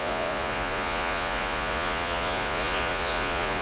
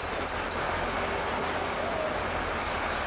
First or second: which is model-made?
first